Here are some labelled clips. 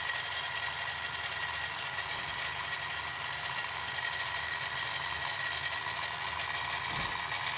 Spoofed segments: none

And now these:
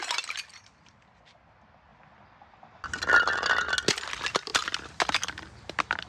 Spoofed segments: none

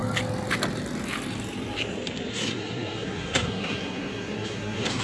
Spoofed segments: 2.3-5.0 (codec, SNAC)

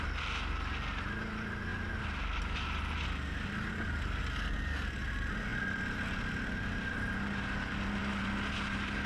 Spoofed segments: none

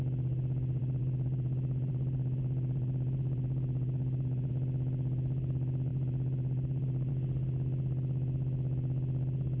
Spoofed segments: 0.8-4.5 (vocoder, BigVGAN v2); 5.9-7.1

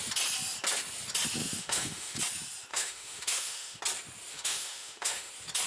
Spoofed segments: 1.4-2.2 (autoencoder, DAC-VAE); 2.7-3.8; 4.3-5.3

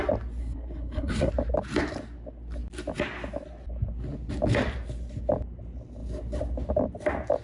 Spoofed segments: 0.4-1.3 (codec, SNAC)

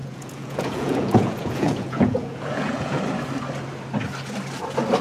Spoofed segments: 0.0-3.0 (vocoder, Vocos)